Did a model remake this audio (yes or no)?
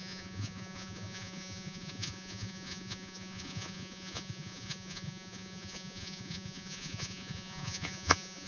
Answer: yes